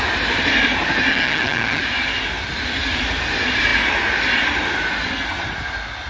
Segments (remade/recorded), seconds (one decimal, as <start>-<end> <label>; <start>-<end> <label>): 0.0-1.1 recorded; 1.1-1.8 remade; 1.8-6.1 recorded